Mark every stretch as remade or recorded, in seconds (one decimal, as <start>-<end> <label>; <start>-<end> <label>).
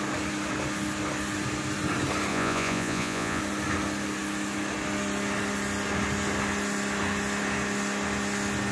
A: 0.0-2.3 recorded; 2.3-3.4 remade; 3.4-8.7 recorded